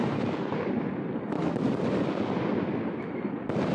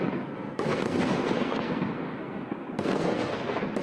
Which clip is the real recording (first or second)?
first